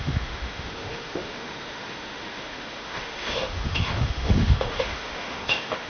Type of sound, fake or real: fake